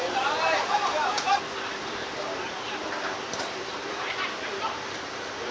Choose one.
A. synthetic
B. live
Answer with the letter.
A